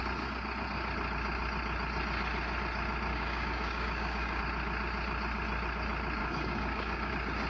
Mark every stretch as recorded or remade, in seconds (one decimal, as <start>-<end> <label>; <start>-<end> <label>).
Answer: 0.0-3.1 recorded; 3.1-4.4 remade; 4.4-6.2 recorded; 6.2-7.1 remade; 7.1-7.5 recorded